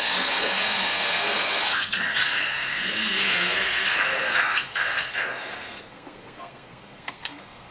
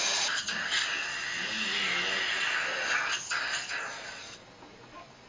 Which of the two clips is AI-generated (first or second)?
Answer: first